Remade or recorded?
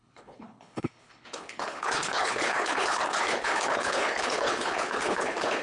remade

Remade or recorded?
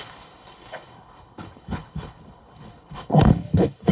remade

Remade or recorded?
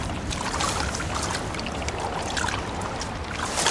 recorded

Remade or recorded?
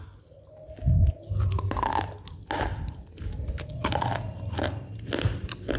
recorded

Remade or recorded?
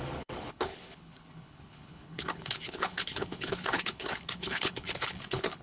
remade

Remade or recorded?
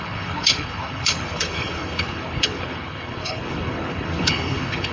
remade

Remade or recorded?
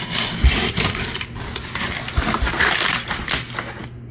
recorded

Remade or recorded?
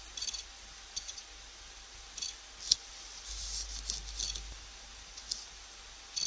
recorded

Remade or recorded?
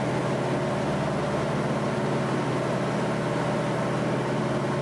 recorded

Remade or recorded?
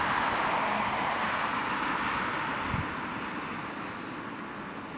recorded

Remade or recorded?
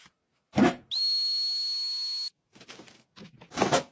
recorded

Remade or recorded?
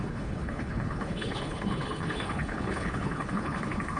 remade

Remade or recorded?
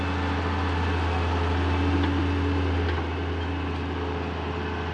recorded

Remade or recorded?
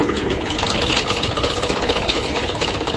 remade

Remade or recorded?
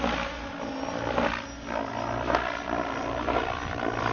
recorded